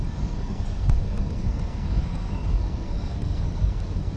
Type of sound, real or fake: fake